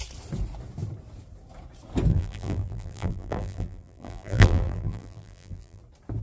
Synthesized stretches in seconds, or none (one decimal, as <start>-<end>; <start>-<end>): 2.1-5.8